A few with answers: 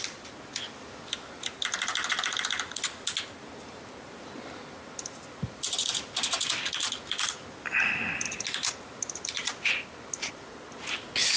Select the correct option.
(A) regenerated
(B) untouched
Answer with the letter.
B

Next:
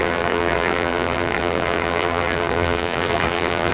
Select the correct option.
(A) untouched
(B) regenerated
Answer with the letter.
B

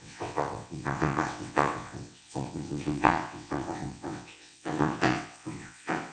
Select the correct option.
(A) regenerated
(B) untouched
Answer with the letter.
A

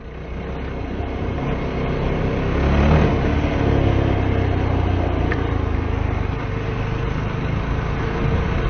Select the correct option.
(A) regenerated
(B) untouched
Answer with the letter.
B